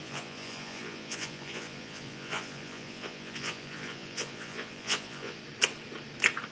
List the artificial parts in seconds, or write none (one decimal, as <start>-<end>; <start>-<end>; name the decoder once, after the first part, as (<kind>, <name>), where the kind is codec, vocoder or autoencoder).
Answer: 0.0-5.4 (vocoder, Vocos)